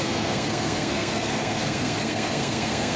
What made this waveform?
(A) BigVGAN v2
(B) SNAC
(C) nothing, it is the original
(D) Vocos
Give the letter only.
B